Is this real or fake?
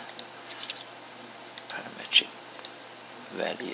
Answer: real